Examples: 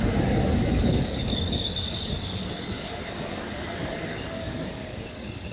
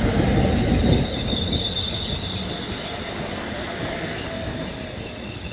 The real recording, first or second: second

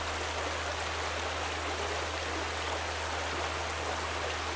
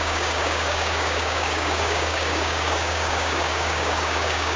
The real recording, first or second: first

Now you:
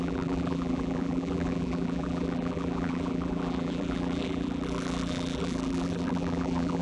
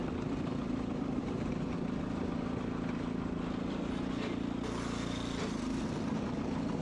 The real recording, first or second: second